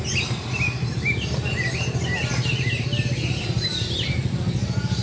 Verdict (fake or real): real